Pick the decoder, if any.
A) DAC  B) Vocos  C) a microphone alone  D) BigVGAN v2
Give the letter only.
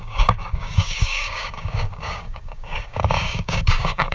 A